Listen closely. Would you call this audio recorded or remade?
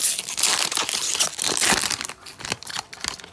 recorded